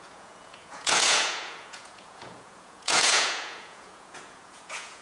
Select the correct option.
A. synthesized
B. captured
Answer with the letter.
A